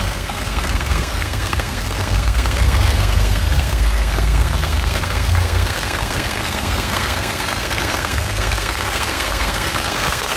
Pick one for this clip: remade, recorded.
remade